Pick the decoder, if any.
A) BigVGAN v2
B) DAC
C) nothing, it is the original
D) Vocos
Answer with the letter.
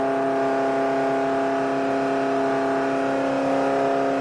C